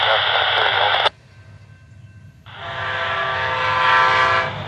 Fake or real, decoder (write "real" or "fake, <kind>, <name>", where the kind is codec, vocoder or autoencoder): real